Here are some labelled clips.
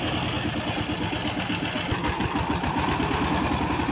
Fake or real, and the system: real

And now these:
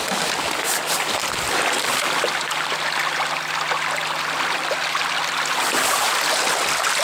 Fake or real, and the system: real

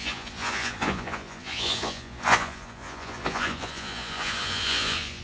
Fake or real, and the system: fake, vocoder, Vocos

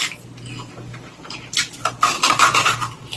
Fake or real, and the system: real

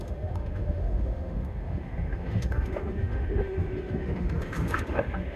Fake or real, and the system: fake, autoencoder, DAC-VAE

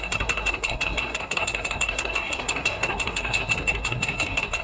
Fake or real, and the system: fake, codec, SNAC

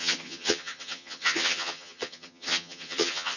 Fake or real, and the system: fake, vocoder, HiFi-GAN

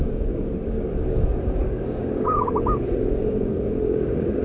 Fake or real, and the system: fake, codec, DAC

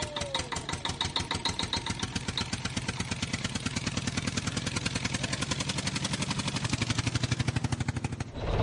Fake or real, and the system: real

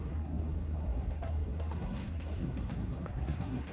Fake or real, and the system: fake, codec, SNAC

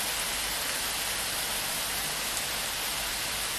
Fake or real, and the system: real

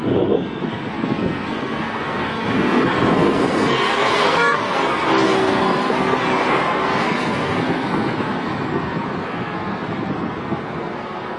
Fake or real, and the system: fake, codec, SNAC